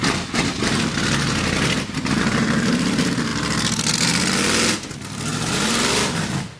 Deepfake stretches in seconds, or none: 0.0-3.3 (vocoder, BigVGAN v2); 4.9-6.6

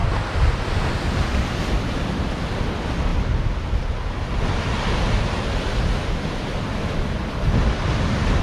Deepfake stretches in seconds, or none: 0.0-1.7 (vocoder, BigVGAN v2)

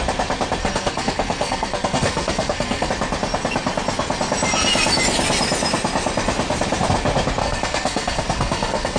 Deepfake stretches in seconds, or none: 0.6-2.9 (codec, SNAC); 7.4-9.0

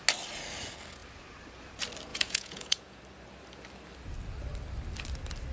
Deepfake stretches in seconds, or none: 2.1-3.0 (vocoder, Vocos)

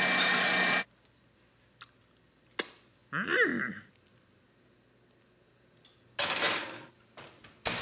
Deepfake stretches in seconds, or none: none

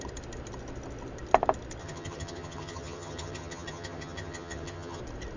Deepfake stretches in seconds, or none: 1.8-5.0 (vocoder, HiFi-GAN)